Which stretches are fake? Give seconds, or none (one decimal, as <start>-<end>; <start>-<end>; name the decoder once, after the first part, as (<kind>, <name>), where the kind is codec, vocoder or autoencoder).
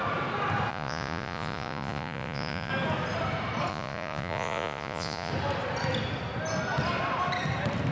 0.7-2.7 (vocoder, Vocos); 3.7-5.3